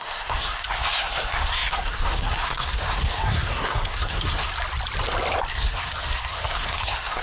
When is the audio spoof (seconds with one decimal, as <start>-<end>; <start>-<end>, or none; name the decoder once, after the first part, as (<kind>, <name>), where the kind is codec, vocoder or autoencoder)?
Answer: 0.0-4.5 (codec, SNAC); 5.5-7.2